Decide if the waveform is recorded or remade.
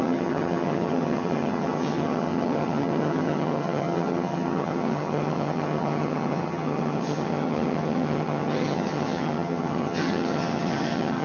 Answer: remade